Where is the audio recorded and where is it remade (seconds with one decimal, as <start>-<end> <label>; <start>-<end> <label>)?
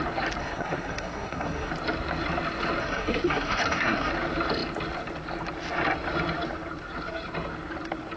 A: 0.0-0.4 recorded; 0.4-1.7 remade; 1.7-2.8 recorded; 2.8-4.1 remade; 4.1-8.2 recorded